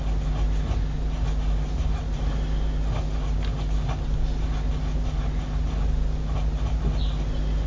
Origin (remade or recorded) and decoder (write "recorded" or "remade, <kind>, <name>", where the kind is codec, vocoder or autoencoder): recorded